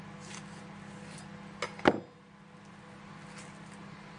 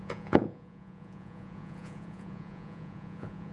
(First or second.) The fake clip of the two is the second